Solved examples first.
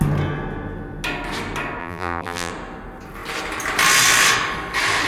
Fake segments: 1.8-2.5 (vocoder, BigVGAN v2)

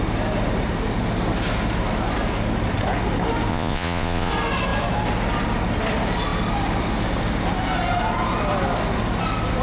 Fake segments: 3.5-4.3 (vocoder, Vocos)

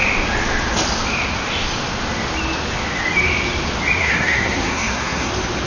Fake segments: 4.0-5.3 (codec, SNAC)